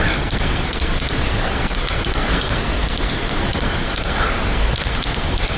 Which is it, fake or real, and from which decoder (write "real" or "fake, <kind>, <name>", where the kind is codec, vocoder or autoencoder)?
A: fake, codec, SNAC